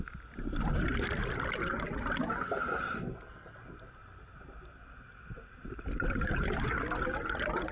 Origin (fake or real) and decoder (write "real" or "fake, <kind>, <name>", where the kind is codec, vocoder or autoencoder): real